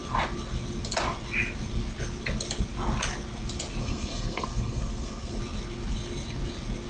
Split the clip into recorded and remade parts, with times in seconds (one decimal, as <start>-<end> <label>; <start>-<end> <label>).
0.0-3.8 recorded; 3.8-5.4 remade; 5.4-6.9 recorded